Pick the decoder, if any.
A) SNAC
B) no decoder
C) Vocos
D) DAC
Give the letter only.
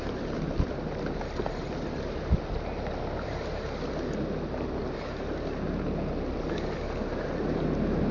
B